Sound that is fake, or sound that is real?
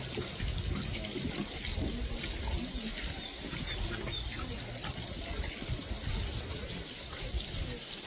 real